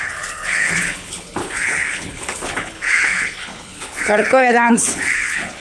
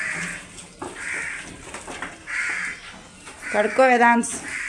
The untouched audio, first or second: second